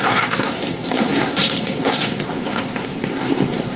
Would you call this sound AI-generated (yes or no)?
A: yes